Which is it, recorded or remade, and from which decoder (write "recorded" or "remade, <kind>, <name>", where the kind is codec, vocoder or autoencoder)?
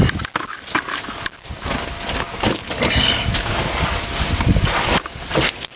recorded